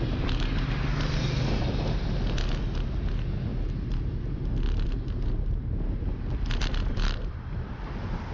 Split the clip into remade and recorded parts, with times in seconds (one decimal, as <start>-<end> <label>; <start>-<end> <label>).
0.0-8.3 recorded